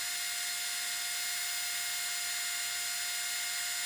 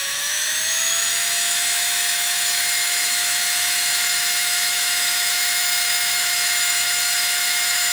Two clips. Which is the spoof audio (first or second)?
second